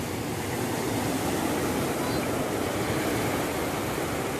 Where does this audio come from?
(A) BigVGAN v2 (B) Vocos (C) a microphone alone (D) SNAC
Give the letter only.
C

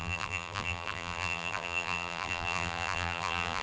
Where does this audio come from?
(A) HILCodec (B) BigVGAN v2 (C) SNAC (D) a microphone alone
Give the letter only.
B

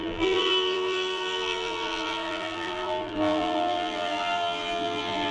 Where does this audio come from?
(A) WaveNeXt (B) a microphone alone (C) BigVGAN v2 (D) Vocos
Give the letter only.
C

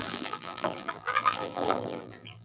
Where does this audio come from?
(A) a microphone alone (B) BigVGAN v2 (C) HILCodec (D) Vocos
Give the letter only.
B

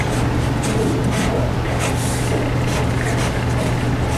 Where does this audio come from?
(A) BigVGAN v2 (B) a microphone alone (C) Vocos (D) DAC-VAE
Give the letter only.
B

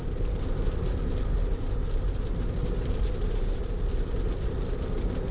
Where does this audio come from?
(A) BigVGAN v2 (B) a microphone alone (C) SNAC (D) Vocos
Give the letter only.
B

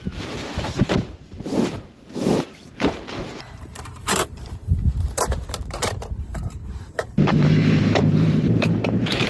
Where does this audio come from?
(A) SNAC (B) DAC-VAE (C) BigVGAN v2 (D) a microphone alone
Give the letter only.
C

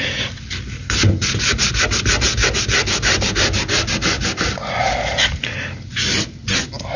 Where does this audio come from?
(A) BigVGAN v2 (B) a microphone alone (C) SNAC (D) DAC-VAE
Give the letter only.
B